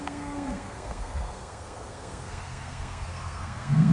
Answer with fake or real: fake